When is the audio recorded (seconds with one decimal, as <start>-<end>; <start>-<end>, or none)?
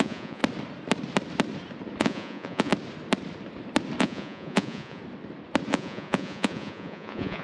0.4-2.0; 2.7-4.0; 5.0-5.7